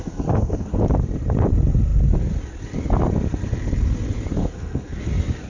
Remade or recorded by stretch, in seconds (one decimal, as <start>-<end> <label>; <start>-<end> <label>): 0.0-0.8 remade; 0.8-4.4 recorded; 4.4-5.0 remade; 5.0-5.5 recorded